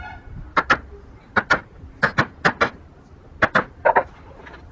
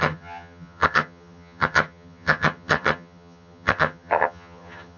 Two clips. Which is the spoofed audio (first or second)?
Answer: second